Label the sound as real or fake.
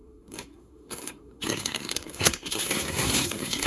fake